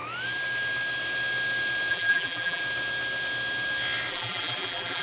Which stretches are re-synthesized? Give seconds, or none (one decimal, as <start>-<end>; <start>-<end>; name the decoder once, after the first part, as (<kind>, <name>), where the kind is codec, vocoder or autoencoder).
1.9-2.6 (vocoder, BigVGAN v2); 4.1-5.0